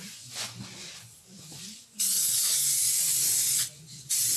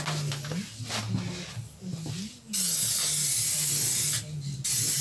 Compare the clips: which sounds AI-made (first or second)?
first